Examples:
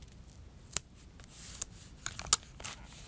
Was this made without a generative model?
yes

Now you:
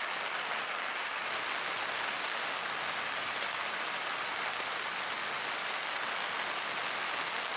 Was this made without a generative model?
yes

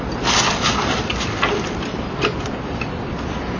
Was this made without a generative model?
yes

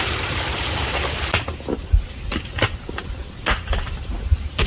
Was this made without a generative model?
yes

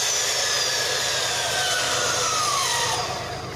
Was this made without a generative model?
yes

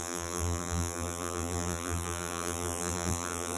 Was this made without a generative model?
no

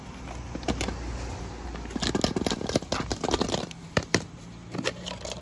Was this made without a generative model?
yes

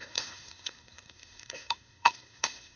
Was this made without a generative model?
no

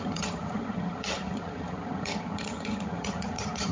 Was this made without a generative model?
no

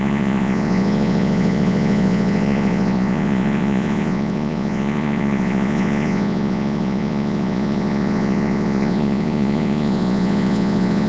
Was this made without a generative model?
no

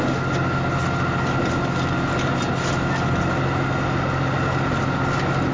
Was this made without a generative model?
yes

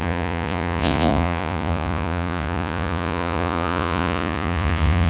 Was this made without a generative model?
no